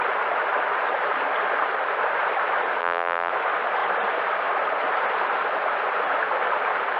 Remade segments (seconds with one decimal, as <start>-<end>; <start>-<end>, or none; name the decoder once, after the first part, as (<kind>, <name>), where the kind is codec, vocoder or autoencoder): 2.8-3.3 (vocoder, BigVGAN v2)